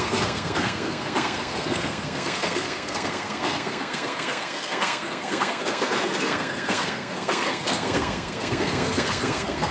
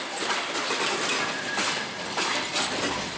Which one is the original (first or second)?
second